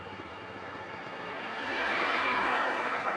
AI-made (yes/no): yes